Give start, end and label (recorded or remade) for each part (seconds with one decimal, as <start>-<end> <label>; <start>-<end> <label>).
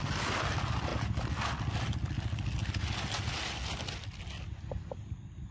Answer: 0.0-5.5 recorded